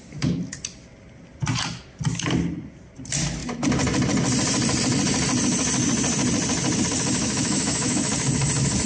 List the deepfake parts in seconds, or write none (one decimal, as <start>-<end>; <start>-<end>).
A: 7.2-8.1